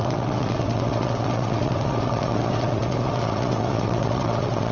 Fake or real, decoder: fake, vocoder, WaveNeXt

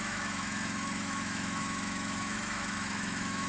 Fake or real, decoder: fake, autoencoder, DAC-VAE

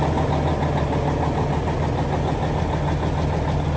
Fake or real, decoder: real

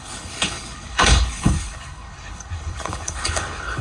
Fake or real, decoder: fake, codec, HILCodec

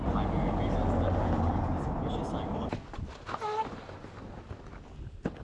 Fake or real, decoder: real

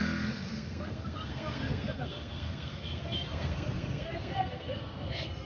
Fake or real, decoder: fake, codec, SNAC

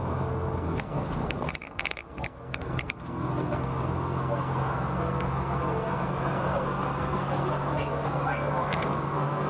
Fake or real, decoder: fake, codec, SNAC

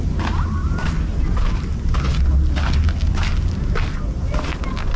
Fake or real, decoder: real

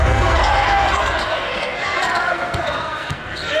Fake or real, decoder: fake, codec, SNAC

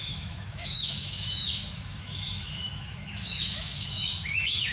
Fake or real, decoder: fake, autoencoder, DAC-VAE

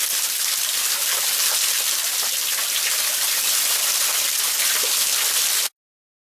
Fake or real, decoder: real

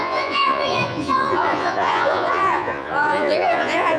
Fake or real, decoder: fake, vocoder, Vocos